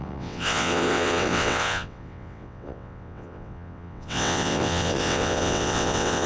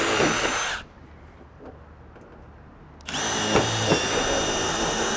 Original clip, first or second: second